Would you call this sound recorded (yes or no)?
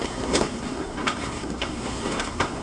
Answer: no